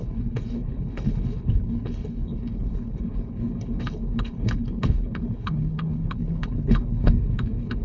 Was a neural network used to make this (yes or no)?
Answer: yes